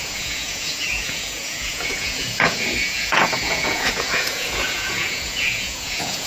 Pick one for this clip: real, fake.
fake